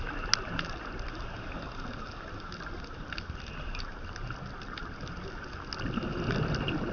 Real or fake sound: real